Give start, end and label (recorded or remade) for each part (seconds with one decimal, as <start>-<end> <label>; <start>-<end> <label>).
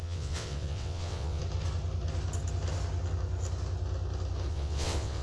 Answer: 0.0-1.4 remade; 1.4-4.5 recorded; 4.5-5.2 remade